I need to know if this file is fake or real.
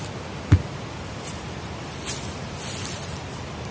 real